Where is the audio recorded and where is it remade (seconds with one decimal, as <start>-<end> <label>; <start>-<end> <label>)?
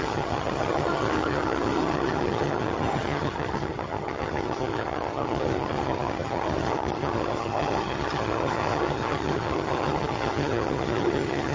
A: 0.0-11.5 remade